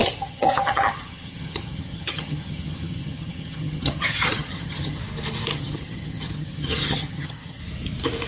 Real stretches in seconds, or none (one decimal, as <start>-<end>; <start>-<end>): 5.0-5.5; 7.6-8.3